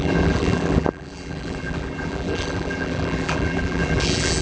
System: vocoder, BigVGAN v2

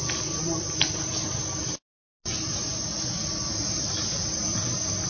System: none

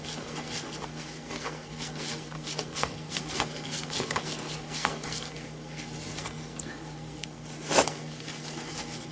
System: codec, SNAC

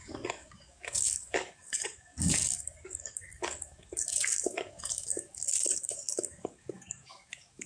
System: codec, DAC